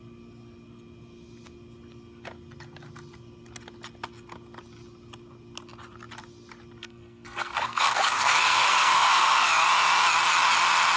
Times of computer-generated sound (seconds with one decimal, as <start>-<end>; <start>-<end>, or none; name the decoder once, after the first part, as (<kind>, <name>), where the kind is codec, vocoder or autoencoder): 6.8-9.5 (codec, SNAC)